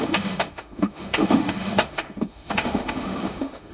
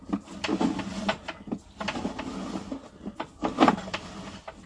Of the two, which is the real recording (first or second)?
second